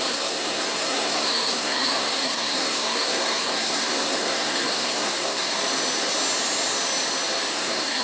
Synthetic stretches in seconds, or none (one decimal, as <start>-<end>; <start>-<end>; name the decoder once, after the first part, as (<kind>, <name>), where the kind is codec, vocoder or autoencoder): 0.0-5.6 (codec, SNAC); 7.5-8.0